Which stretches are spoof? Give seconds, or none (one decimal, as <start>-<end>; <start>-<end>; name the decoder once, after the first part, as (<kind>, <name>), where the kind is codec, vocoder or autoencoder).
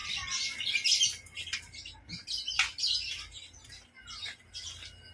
none